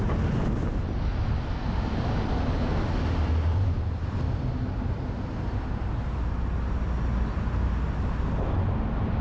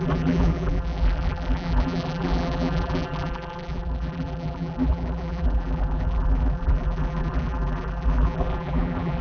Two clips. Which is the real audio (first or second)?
first